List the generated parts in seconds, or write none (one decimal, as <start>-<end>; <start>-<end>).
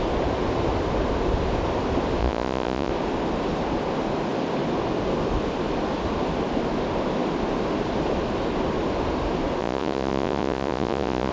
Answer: 2.2-2.9; 9.6-11.3